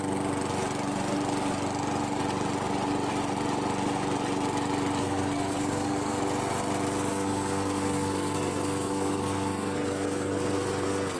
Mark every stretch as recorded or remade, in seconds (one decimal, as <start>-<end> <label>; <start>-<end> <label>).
0.0-5.0 recorded; 5.0-6.2 remade; 6.2-7.1 recorded; 7.1-11.2 remade